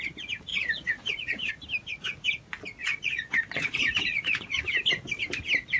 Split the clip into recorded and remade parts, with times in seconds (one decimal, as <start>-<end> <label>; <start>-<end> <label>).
0.0-0.5 recorded; 0.5-1.5 remade; 1.5-2.8 recorded; 2.8-4.6 remade; 4.6-5.8 recorded